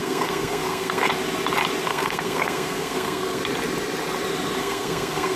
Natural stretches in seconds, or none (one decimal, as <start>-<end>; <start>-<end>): 1.1-1.9; 3.4-4.6